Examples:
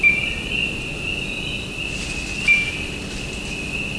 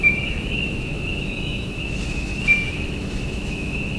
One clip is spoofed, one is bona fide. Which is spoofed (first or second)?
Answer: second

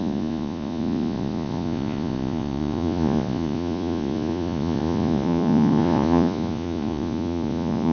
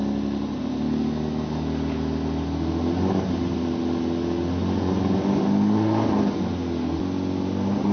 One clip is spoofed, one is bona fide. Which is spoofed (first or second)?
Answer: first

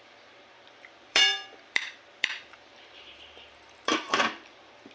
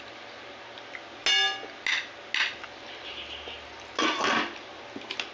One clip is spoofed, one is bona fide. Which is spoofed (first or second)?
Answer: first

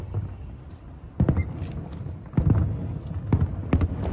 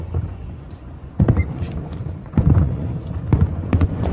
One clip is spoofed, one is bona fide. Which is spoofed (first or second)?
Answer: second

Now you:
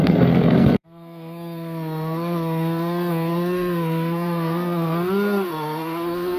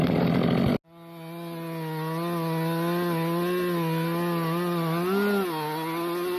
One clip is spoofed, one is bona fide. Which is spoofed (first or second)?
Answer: first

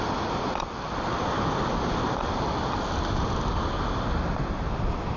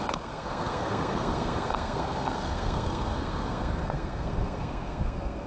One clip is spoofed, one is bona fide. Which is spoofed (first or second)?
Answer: second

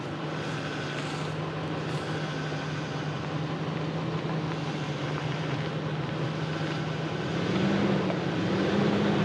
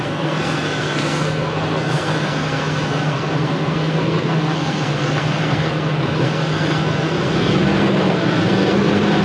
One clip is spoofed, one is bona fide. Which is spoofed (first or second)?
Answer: second